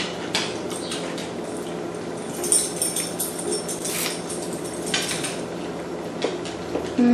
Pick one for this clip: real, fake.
real